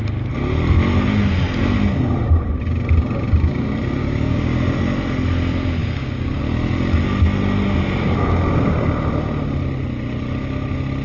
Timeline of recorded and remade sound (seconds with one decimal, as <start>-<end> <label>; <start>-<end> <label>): 0.0-4.0 recorded; 4.0-4.6 remade; 4.6-5.8 recorded; 5.8-6.4 remade; 6.4-11.0 recorded